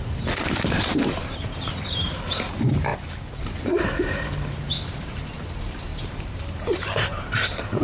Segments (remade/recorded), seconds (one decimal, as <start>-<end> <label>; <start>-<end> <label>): 0.0-7.8 remade